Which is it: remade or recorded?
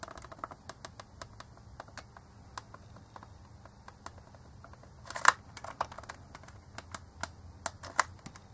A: recorded